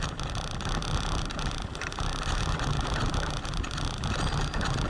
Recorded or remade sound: recorded